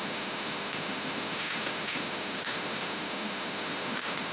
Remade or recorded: remade